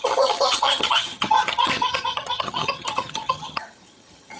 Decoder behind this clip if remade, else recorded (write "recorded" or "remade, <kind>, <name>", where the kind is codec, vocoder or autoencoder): remade, vocoder, HiFi-GAN